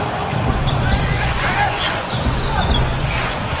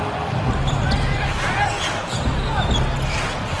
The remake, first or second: first